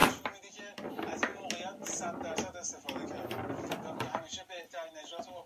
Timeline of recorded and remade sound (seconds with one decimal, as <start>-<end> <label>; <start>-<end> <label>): 0.0-0.9 recorded; 0.9-1.3 remade; 1.3-3.8 recorded; 3.8-5.5 remade